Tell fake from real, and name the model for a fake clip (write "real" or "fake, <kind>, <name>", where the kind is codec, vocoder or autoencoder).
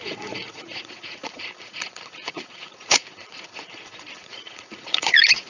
fake, vocoder, Vocos